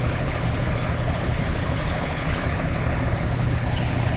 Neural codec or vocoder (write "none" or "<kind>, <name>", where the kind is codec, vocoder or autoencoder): codec, HILCodec